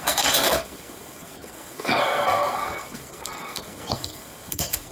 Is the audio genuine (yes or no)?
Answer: no